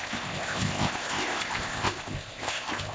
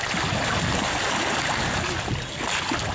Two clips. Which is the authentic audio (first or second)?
second